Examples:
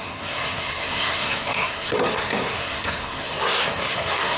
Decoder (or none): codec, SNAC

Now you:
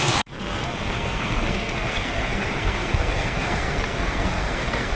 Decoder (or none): codec, SNAC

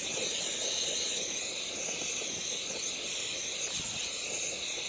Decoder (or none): none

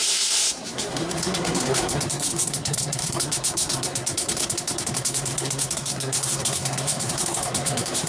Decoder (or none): codec, SNAC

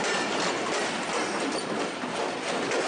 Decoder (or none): none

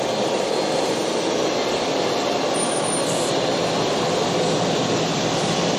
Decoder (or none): none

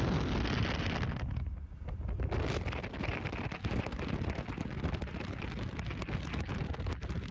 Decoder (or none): none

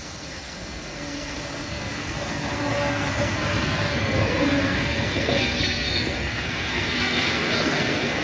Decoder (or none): codec, SNAC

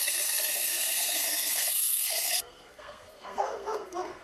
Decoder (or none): codec, SNAC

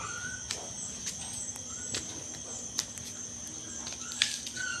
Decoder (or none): none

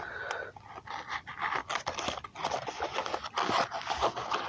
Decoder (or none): none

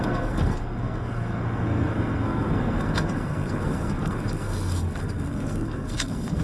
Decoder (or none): codec, SNAC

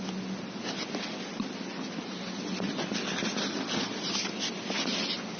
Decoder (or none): none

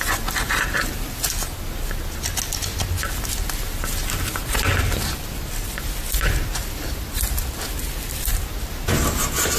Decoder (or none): none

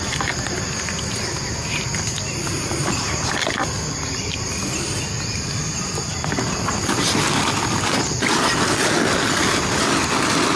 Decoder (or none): none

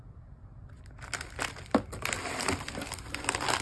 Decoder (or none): none